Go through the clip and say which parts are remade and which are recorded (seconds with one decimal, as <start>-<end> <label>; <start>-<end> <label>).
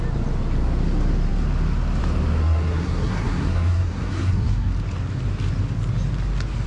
0.0-2.4 recorded; 2.4-4.7 remade; 4.7-6.7 recorded